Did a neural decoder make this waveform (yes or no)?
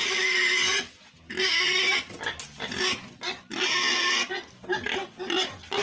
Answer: no